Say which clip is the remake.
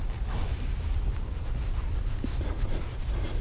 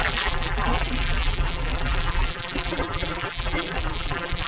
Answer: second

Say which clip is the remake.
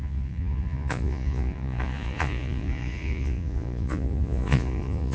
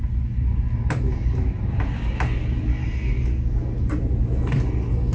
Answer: first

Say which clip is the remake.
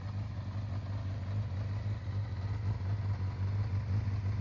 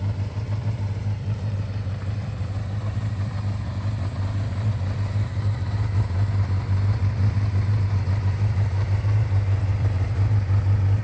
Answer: second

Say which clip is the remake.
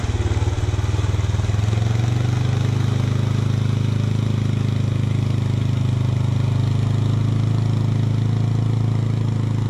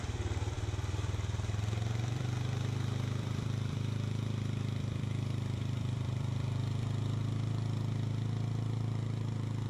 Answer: second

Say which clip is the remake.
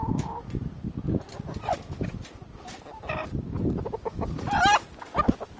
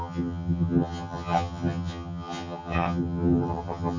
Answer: second